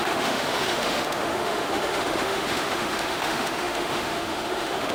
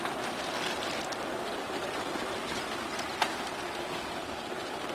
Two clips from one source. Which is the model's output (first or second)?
first